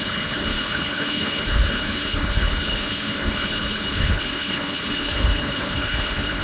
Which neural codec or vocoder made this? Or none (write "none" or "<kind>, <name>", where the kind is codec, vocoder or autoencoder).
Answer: codec, HILCodec